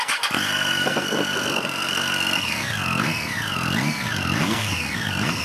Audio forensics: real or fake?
fake